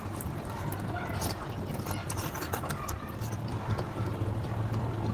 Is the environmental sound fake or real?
fake